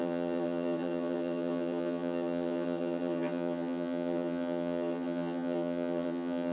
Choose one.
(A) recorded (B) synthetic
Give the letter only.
B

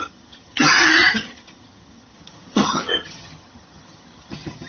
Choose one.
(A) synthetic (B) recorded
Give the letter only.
A